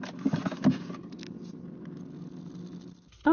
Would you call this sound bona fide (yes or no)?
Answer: yes